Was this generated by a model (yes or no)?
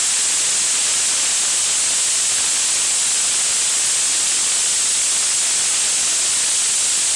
no